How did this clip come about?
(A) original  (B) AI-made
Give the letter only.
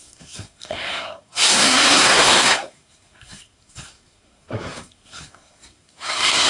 B